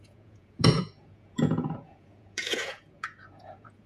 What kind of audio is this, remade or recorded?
remade